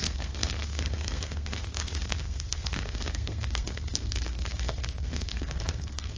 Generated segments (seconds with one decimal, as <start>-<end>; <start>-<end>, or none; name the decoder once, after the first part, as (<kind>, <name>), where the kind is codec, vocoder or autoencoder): 0.0-6.2 (codec, SNAC)